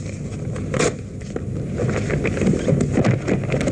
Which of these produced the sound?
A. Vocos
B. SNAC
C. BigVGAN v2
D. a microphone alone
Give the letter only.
D